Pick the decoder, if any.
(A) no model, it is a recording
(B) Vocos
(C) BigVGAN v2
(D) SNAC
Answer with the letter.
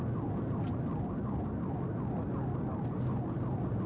A